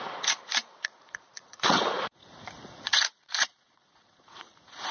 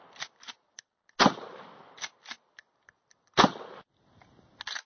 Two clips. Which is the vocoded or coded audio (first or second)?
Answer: first